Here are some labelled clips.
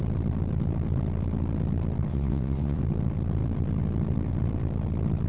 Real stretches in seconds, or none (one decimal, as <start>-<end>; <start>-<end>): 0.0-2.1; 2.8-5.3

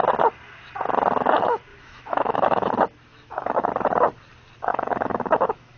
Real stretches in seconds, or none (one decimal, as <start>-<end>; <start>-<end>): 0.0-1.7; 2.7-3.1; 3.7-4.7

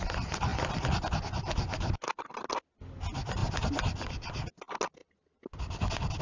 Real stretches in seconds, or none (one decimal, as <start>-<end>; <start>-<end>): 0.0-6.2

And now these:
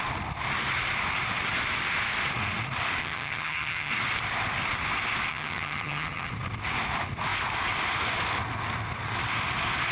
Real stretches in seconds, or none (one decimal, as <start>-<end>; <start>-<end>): 0.0-3.0; 3.9-5.3; 6.3-9.9

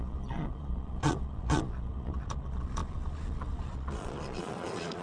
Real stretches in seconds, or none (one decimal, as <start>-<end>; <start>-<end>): none

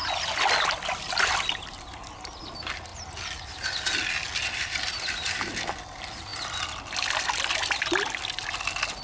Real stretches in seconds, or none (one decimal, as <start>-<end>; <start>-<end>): 0.0-9.0

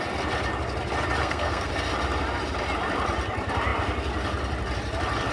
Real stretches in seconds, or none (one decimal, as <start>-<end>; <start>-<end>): 0.0-1.2; 1.7-5.3